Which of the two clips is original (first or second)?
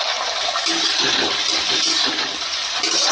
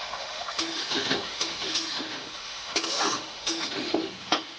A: first